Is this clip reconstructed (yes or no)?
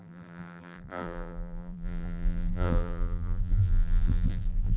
yes